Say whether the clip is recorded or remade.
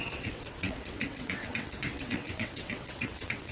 remade